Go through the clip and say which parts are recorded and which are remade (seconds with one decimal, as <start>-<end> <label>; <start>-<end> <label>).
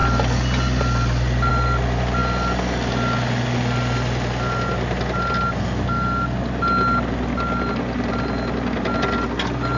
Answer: 0.0-9.8 recorded